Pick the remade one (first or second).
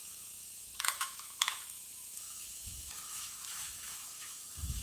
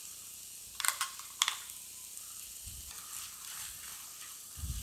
first